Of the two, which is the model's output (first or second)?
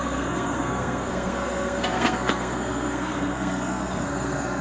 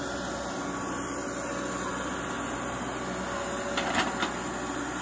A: first